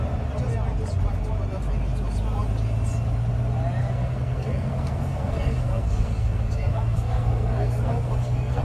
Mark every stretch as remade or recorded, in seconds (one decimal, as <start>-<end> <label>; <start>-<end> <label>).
0.0-3.8 recorded; 3.8-8.6 remade